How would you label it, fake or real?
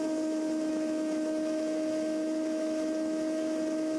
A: fake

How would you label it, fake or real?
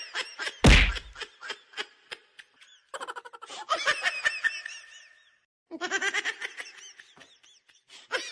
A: real